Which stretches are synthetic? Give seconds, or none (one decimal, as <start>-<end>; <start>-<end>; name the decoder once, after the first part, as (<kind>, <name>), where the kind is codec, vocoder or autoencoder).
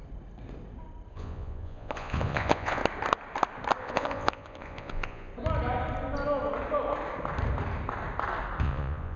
1.1-2.8 (vocoder, Vocos); 3.8-5.3; 8.6-9.2